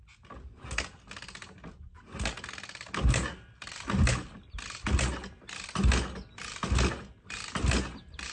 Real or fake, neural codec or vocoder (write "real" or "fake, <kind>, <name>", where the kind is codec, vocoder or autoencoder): real